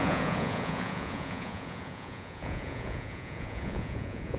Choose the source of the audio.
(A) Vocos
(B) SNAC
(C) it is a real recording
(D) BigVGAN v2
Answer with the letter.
A